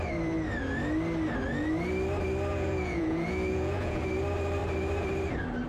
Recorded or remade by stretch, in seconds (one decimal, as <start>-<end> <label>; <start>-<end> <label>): 0.0-2.5 recorded; 2.5-4.0 remade; 4.0-5.7 recorded